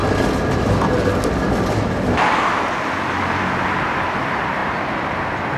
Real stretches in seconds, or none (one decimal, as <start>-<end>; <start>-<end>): 0.0-5.6